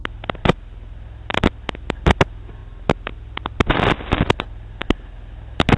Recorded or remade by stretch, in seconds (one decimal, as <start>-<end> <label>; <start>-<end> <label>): 0.0-5.8 recorded